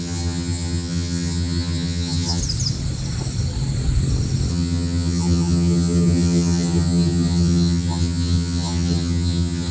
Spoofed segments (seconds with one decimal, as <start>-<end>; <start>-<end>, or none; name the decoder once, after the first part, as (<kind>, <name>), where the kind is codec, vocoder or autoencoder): 0.0-2.4 (vocoder, HiFi-GAN); 4.5-9.7